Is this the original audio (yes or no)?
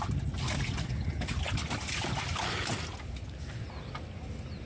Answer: yes